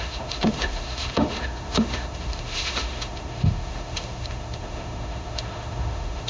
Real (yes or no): no